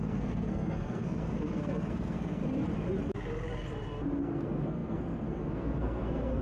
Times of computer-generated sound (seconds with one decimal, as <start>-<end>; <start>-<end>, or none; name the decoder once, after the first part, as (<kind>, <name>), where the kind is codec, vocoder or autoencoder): 0.0-2.4 (codec, SNAC); 4.2-6.4

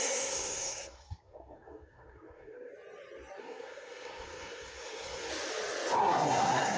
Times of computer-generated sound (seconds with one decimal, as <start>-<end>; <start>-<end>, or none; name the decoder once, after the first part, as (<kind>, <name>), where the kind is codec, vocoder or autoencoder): 0.0-2.7 (codec, SNAC); 3.4-5.3; 6.0-6.8

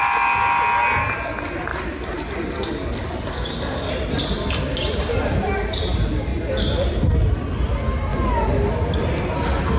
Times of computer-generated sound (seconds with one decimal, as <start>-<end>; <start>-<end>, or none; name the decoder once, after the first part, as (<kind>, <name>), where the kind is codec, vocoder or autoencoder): 3.3-3.9 (codec, SNAC)

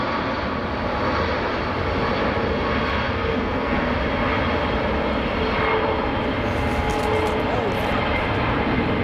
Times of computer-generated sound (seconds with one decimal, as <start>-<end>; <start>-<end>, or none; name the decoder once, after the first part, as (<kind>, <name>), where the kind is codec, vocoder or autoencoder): 3.0-3.9 (codec, SNAC)

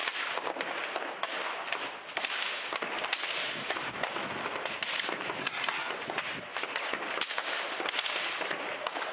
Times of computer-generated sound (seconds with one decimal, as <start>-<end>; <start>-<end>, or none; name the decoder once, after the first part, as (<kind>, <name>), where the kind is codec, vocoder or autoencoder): 5.4-5.9 (codec, SNAC)

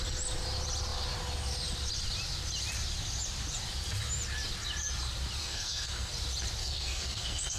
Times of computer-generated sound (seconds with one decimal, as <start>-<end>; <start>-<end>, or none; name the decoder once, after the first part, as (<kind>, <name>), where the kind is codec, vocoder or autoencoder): 5.4-6.1 (codec, SNAC); 6.6-7.6